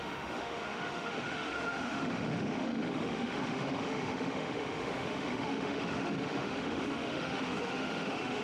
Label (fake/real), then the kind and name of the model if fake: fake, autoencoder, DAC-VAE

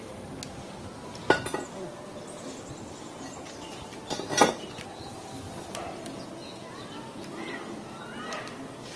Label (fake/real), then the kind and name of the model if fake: real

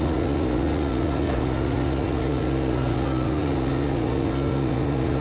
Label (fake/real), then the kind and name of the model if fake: fake, vocoder, Vocos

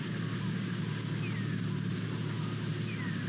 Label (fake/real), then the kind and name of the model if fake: real